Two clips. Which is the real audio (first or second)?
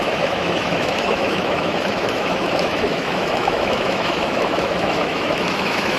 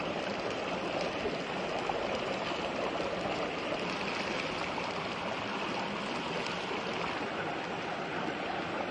second